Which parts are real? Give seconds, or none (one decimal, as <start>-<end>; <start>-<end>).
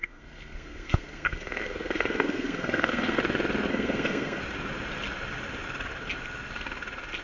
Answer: 3.2-3.7; 4.4-7.2